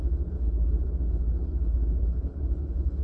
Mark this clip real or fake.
fake